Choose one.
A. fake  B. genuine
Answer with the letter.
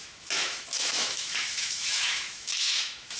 A